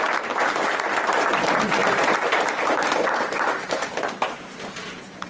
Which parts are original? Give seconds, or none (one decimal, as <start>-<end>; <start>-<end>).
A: 0.7-1.8